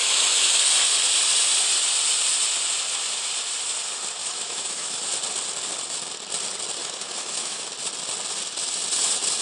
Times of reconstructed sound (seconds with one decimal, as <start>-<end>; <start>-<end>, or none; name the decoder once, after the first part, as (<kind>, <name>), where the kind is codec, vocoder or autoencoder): 0.0-0.6 (autoencoder, DAC-VAE); 4.2-5.0; 6.8-7.7

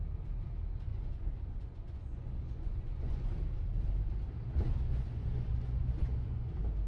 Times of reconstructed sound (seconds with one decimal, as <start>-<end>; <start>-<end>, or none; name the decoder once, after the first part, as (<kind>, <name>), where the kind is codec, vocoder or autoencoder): 0.9-3.3 (vocoder, Vocos); 4.9-6.5

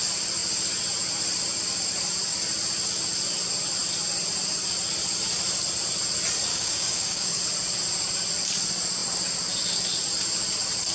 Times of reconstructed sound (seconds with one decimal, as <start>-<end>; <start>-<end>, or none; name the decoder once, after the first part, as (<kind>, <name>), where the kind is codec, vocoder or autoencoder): 6.5-7.4 (codec, DAC)

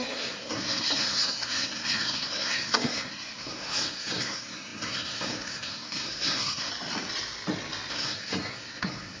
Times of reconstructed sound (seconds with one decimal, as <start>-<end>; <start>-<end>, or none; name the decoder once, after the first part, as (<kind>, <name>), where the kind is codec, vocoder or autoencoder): 0.0-6.7 (codec, SNAC); 7.9-9.2